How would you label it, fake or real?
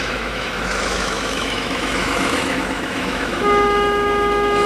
fake